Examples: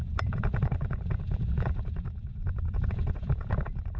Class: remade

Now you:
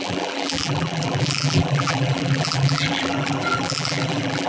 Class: remade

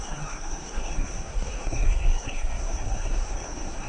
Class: remade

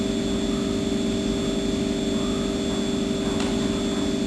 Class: recorded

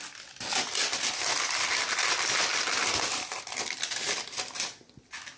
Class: recorded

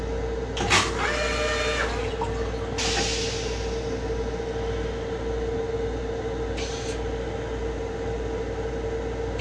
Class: recorded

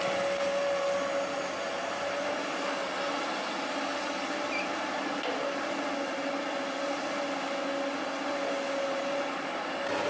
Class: recorded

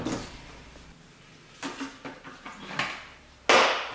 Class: recorded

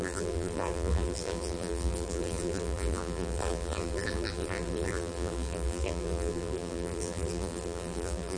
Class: remade